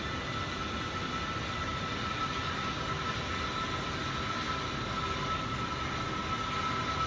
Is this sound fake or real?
real